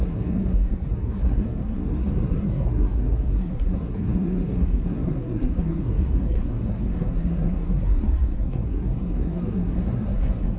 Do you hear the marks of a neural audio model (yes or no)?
yes